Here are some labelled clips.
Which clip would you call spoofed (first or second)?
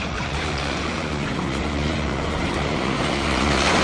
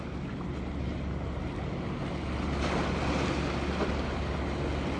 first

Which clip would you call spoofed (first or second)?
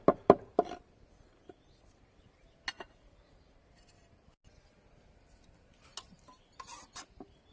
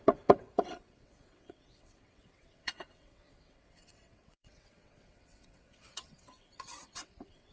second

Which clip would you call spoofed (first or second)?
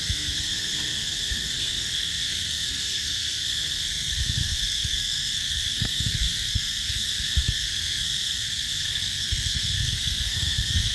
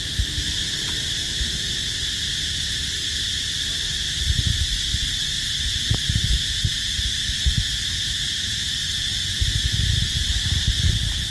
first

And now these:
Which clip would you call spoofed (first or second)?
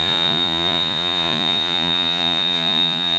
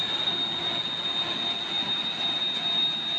first